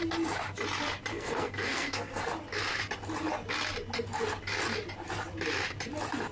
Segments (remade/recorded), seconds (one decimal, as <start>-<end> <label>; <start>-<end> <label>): 0.0-1.1 recorded; 1.1-2.2 remade; 2.2-6.3 recorded